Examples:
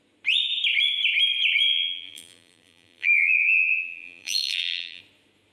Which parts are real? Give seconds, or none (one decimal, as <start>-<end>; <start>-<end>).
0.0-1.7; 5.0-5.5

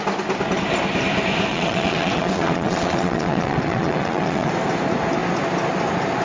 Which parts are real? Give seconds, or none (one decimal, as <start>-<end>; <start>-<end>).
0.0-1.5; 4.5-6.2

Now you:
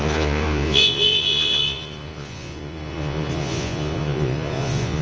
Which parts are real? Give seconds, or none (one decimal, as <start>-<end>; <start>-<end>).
none

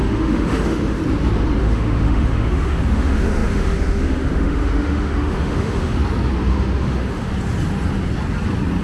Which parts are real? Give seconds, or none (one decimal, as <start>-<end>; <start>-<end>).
1.0-1.6; 6.0-6.5; 7.3-8.8